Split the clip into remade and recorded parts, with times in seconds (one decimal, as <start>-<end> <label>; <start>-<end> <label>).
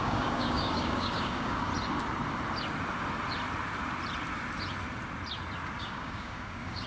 0.0-1.7 remade; 1.7-5.8 recorded; 5.8-6.9 remade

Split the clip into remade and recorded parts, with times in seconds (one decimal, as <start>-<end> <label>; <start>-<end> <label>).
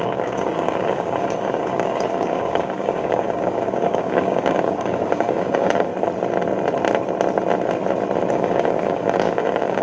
0.0-5.9 remade; 5.9-8.3 recorded; 8.3-9.8 remade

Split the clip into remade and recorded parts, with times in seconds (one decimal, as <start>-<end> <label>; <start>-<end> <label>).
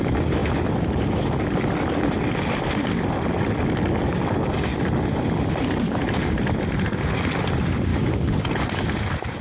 0.0-7.9 recorded; 7.9-8.5 remade; 8.5-9.4 recorded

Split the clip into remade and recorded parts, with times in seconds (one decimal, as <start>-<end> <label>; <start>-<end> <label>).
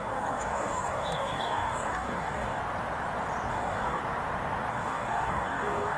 0.0-2.6 remade; 2.6-3.5 recorded; 3.5-4.0 remade; 4.0-4.7 recorded; 4.7-6.0 remade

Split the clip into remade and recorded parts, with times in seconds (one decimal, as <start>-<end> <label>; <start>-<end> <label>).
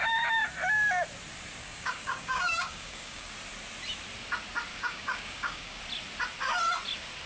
0.0-1.6 recorded; 1.6-3.3 remade; 3.3-4.7 recorded; 4.7-5.8 remade; 5.8-7.3 recorded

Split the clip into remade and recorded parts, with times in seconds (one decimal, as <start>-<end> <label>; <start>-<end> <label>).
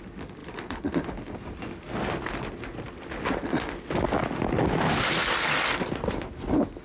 0.0-6.8 recorded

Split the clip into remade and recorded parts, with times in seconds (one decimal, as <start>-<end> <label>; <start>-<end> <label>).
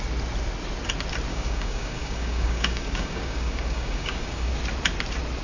0.0-1.3 recorded; 1.3-4.5 remade; 4.5-5.4 recorded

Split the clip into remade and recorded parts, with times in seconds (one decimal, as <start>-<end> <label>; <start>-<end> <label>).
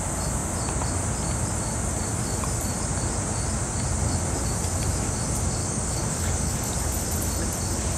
0.0-5.6 recorded; 5.6-6.7 remade; 6.7-8.0 recorded